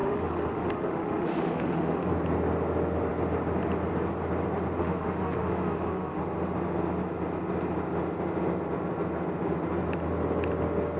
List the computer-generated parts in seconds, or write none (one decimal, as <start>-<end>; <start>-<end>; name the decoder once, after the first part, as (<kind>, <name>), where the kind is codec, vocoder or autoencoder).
0.0-2.1 (autoencoder, DAC-VAE); 4.8-6.2